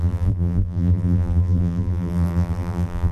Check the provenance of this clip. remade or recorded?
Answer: remade